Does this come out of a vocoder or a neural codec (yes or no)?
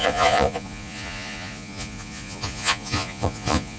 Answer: yes